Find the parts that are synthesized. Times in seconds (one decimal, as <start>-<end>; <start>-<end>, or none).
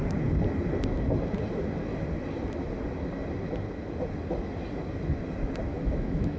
5.7-6.4